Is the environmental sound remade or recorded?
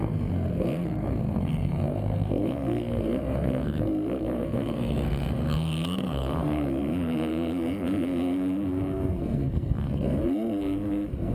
remade